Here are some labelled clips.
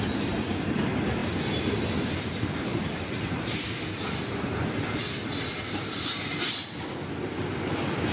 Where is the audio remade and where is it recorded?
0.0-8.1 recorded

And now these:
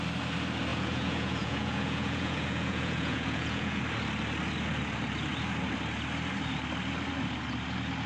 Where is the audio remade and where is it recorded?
0.0-0.7 recorded; 0.7-3.8 remade; 3.8-8.1 recorded

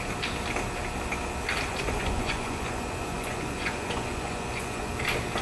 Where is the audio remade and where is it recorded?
0.0-1.7 recorded; 1.7-4.9 remade; 4.9-5.4 recorded

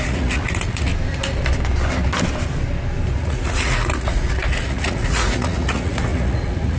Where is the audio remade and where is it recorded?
0.0-0.9 remade; 0.9-3.2 recorded; 3.2-6.8 remade

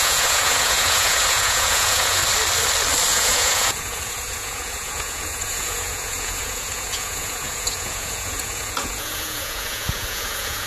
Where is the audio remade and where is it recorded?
0.0-2.2 remade; 2.2-3.1 recorded; 3.1-10.7 remade

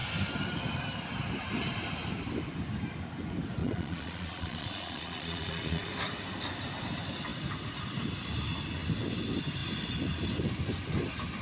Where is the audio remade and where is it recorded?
0.0-3.6 recorded; 3.6-5.9 remade; 5.9-11.4 recorded